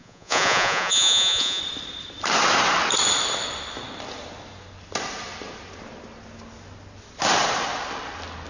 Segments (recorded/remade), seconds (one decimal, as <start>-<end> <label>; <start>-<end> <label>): 0.0-1.6 remade; 1.6-8.5 recorded